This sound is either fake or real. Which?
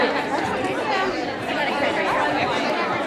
fake